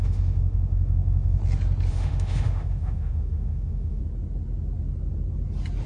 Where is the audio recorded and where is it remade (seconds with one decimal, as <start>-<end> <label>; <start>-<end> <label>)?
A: 0.0-1.4 remade; 1.4-1.9 recorded; 1.9-4.0 remade; 4.0-5.9 recorded